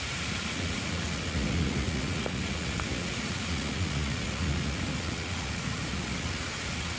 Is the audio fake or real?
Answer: fake